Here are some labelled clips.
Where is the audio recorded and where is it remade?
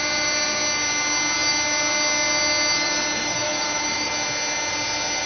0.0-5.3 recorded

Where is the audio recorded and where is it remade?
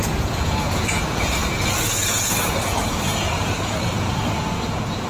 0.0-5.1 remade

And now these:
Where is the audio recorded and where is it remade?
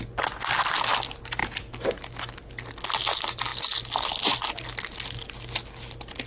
0.0-6.3 recorded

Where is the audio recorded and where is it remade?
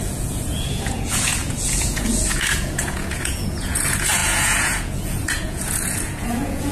0.0-6.7 remade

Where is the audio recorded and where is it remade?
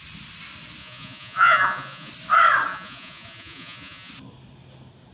0.0-0.8 recorded; 0.8-2.1 remade; 2.1-2.7 recorded; 2.7-4.1 remade; 4.1-5.1 recorded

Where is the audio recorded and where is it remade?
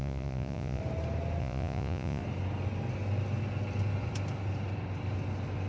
0.0-0.8 remade; 0.8-1.4 recorded; 1.4-2.2 remade; 2.2-5.7 recorded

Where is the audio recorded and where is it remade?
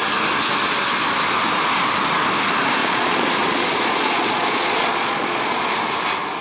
0.0-2.8 recorded; 2.8-5.6 remade; 5.6-6.4 recorded